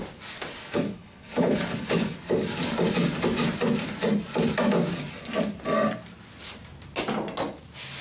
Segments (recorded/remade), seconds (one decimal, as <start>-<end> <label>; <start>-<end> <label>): 0.0-0.6 recorded; 0.6-2.2 remade; 2.2-8.0 recorded